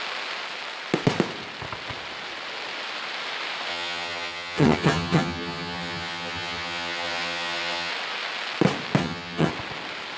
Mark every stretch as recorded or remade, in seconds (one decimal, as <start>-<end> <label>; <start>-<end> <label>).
0.0-3.7 recorded; 3.7-7.9 remade; 7.9-9.0 recorded; 9.0-9.5 remade; 9.5-10.2 recorded